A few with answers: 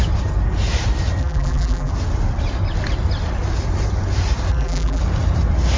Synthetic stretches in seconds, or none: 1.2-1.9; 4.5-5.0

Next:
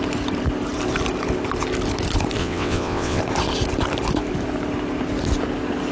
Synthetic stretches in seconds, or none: 2.4-3.2

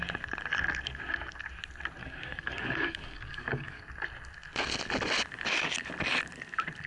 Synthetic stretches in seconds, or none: 2.0-3.8

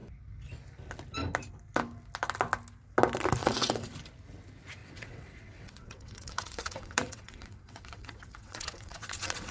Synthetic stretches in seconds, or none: 3.4-3.9; 4.8-9.5